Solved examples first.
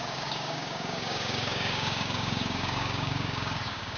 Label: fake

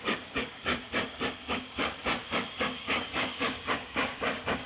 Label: fake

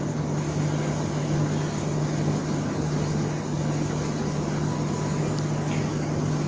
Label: real